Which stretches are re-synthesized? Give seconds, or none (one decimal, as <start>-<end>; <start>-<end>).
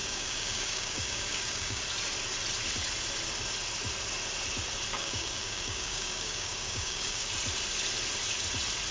0.0-1.8; 4.9-7.3